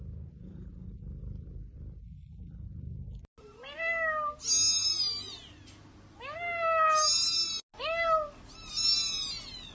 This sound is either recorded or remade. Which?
recorded